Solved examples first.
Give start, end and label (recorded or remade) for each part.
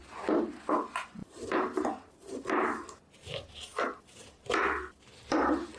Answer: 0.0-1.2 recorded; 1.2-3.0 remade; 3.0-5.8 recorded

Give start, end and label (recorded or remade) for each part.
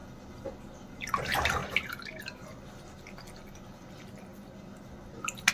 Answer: 0.0-5.5 recorded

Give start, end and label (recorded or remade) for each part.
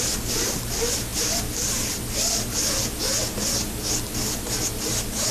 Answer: 0.0-5.3 recorded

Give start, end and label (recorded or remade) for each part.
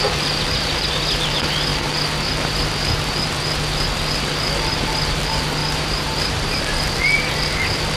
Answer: 0.0-5.6 recorded; 5.6-6.6 remade; 6.6-8.0 recorded